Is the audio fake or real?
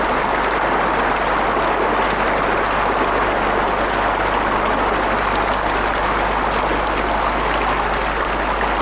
real